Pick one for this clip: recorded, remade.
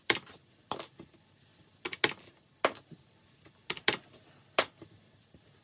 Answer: recorded